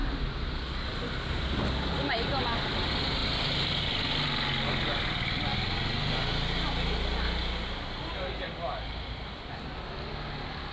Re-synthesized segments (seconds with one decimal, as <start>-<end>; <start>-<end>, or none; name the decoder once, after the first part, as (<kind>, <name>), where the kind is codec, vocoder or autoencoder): none